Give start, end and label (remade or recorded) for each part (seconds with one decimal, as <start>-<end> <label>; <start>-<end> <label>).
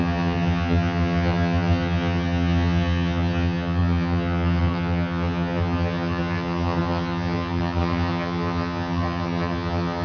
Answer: 0.0-10.0 remade